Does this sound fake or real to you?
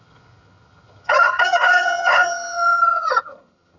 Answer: fake